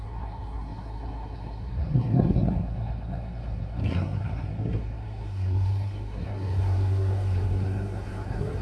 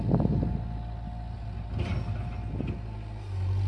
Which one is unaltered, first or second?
second